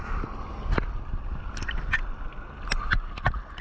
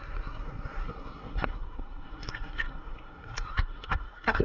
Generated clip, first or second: second